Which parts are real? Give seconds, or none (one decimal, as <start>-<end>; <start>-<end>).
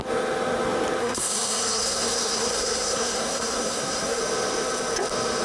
0.0-1.0; 4.2-5.4